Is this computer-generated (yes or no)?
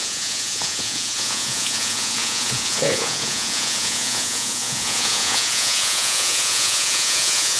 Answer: yes